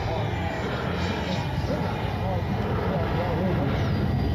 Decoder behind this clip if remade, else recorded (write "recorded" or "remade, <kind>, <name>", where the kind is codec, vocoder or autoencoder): recorded